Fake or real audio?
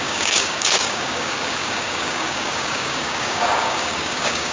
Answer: fake